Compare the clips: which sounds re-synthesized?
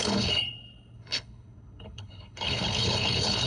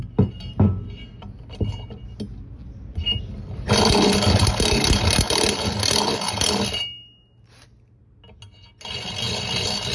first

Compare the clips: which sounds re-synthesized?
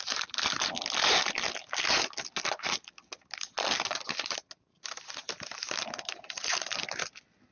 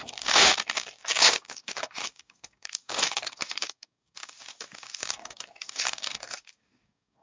second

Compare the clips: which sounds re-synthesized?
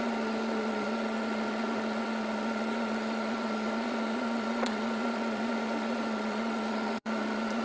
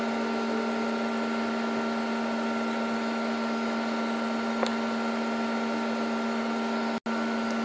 first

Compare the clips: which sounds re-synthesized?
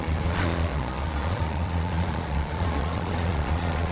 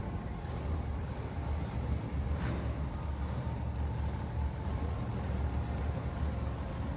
first